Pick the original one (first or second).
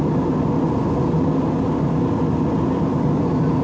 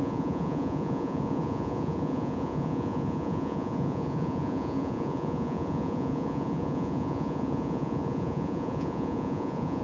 first